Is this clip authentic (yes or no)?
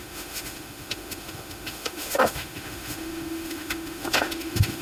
no